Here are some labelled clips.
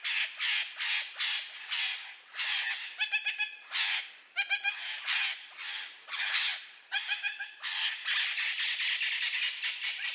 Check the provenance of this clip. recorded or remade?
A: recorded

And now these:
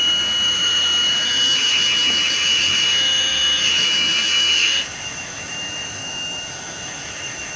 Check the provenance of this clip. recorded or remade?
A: remade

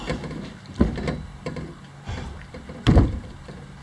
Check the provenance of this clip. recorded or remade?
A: remade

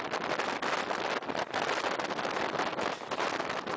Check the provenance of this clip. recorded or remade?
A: recorded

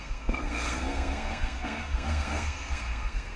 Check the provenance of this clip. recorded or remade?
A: remade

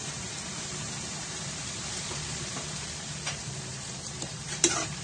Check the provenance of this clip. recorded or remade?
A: remade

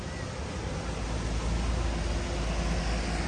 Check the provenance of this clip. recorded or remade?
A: recorded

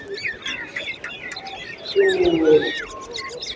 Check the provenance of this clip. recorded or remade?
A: recorded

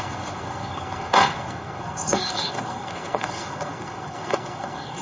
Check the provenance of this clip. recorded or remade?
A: remade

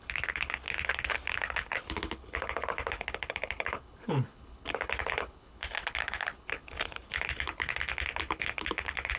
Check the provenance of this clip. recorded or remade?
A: remade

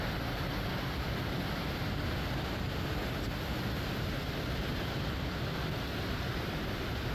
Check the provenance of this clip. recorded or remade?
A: recorded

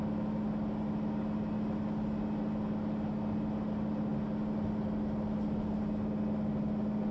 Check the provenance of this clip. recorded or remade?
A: recorded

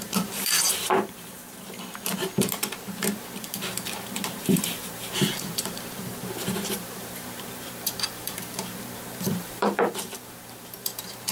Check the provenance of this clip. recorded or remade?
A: remade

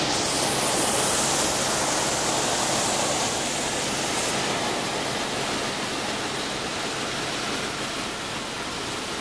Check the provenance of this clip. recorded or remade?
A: recorded